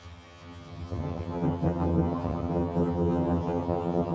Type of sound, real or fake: fake